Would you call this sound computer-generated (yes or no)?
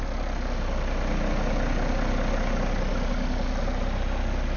no